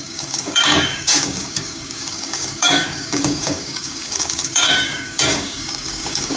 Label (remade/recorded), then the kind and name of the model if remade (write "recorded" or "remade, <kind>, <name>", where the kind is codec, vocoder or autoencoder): remade, codec, DAC